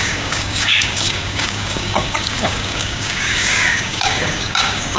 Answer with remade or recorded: remade